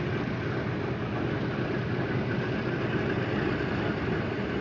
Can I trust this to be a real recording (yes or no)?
yes